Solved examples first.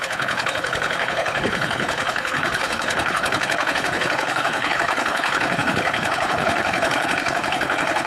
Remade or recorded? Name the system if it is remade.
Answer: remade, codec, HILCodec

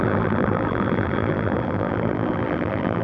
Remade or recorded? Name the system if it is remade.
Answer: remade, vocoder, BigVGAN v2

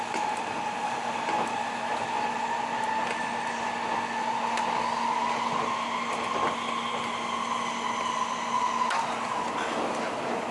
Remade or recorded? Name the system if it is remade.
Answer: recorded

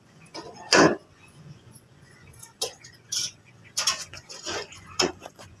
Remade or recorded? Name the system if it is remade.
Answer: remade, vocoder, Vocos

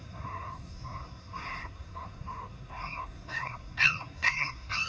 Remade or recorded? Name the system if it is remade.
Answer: remade, codec, SNAC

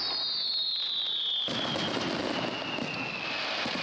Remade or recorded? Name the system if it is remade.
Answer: recorded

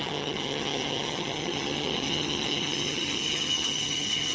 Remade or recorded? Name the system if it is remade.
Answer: remade, vocoder, HiFi-GAN